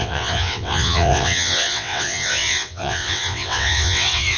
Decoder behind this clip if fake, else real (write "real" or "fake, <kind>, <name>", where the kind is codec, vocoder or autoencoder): fake, vocoder, WaveNeXt